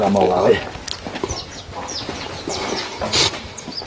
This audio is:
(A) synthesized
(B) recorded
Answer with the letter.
B